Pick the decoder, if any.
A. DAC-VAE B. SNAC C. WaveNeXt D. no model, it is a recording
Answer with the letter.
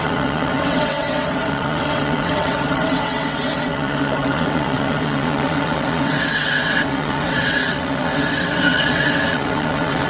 C